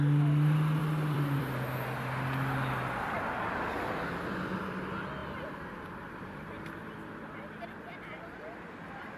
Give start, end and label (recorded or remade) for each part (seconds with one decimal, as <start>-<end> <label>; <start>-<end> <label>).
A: 0.0-0.8 recorded; 0.8-1.5 remade; 1.5-5.2 recorded; 5.2-7.6 remade; 7.6-9.2 recorded